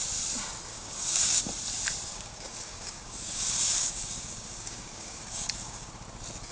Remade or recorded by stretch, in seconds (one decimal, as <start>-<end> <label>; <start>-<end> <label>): 0.0-0.7 recorded; 0.7-1.4 remade; 1.4-2.1 recorded; 2.1-5.9 remade; 5.9-6.5 recorded